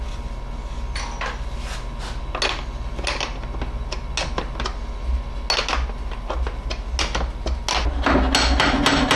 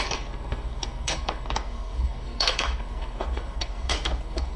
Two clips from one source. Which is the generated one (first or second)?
second